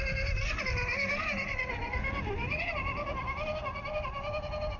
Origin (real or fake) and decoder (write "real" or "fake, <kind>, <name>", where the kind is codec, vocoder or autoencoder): real